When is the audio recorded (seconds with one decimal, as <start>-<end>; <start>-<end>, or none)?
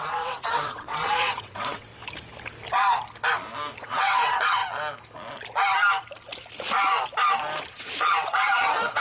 1.9-3.8; 4.6-7.7